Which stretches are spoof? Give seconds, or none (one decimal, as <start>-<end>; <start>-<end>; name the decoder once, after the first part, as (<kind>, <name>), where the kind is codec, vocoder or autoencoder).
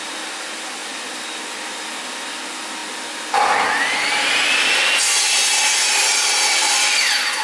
none